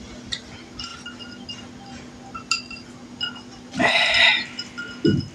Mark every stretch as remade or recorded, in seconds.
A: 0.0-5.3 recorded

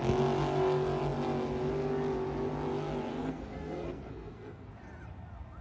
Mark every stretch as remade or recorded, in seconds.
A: 0.0-3.1 recorded; 3.1-4.7 remade; 4.7-5.6 recorded

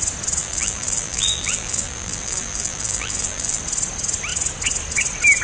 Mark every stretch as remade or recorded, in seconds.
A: 0.0-0.4 recorded; 0.4-3.6 remade; 3.6-5.4 recorded

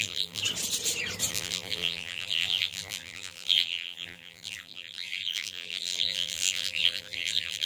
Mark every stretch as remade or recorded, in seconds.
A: 0.0-0.4 remade; 0.4-1.3 recorded; 1.3-7.7 remade